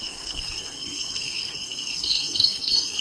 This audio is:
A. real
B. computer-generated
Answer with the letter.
B